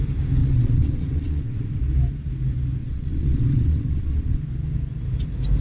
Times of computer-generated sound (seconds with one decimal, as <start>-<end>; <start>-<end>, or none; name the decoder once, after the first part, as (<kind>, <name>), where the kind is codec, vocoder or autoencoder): 0.4-1.8 (vocoder, WaveNeXt); 2.8-4.4